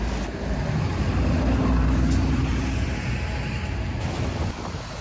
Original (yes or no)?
yes